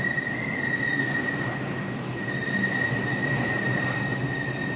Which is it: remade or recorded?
recorded